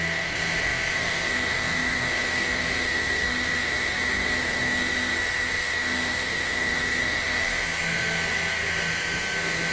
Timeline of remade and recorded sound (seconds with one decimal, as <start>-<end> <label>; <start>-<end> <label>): 0.0-9.7 remade